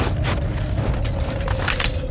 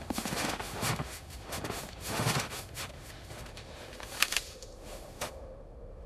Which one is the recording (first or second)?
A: first